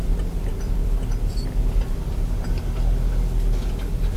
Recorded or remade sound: recorded